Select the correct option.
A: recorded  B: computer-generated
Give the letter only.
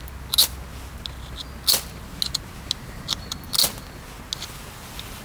A